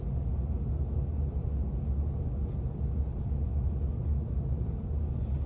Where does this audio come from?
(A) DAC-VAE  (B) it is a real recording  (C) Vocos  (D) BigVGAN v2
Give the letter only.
B